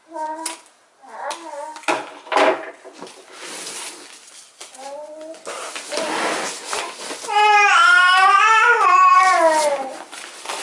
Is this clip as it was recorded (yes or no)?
yes